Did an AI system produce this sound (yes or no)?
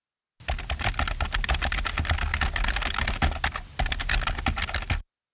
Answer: no